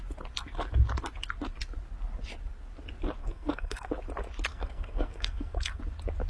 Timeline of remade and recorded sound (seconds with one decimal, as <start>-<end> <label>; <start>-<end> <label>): 0.0-3.2 recorded; 3.2-3.9 remade; 3.9-4.5 recorded; 4.5-5.8 remade; 5.8-6.3 recorded